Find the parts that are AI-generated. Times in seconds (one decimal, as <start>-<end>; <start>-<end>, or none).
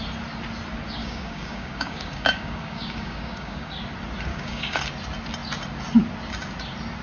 1.0-3.7; 4.3-4.8